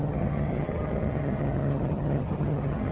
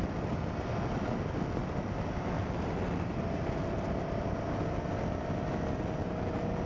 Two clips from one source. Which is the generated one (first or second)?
first